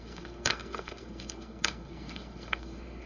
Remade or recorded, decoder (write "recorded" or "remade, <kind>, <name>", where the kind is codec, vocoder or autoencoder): remade, codec, SNAC